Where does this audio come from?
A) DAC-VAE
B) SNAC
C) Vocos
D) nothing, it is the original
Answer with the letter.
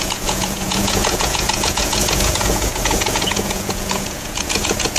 C